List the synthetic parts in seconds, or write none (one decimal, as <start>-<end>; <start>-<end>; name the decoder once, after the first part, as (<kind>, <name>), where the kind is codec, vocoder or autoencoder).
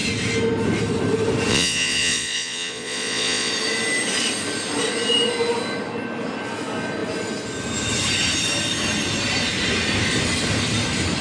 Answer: 1.5-3.5 (vocoder, Vocos)